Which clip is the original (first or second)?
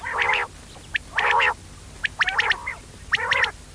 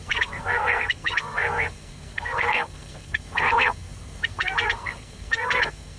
first